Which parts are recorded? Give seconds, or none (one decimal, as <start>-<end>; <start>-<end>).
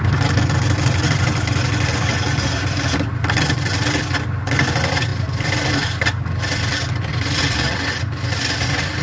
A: 0.0-9.0